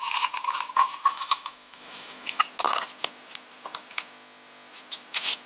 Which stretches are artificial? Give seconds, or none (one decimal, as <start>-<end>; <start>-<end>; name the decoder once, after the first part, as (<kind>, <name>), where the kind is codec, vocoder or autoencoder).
1.1-2.4 (autoencoder, DAC-VAE)